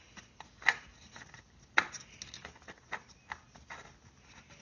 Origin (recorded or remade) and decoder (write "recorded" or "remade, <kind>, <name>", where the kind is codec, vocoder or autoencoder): recorded